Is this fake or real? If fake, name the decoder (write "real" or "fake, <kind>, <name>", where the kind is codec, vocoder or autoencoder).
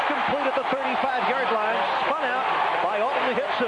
real